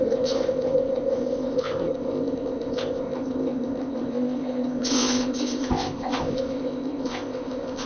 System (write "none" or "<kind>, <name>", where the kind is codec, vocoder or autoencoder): codec, ZipCodec